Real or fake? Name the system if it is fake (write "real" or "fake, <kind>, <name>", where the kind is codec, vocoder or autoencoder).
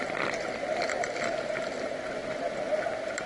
real